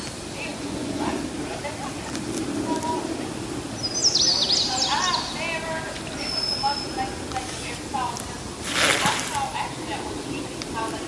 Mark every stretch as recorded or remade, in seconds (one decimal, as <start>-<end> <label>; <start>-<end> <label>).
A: 0.0-0.5 recorded; 0.5-1.2 remade; 1.2-11.1 recorded